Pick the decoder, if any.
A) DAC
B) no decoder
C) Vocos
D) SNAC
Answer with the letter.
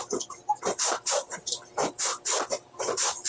B